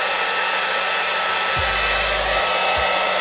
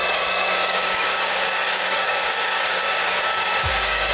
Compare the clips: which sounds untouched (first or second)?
first